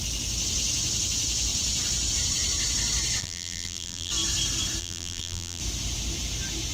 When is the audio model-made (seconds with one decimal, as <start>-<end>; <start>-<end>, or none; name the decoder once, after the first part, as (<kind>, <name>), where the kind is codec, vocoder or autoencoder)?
3.2-4.1 (vocoder, BigVGAN v2); 4.8-5.6